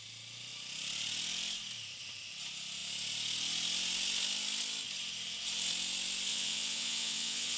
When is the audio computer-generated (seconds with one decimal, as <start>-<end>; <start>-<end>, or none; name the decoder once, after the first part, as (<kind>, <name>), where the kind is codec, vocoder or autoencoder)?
6.3-7.6 (vocoder, WaveNeXt)